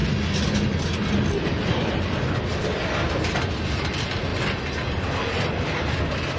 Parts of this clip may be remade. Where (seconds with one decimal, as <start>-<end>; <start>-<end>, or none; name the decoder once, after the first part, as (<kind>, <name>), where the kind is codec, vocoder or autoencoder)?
none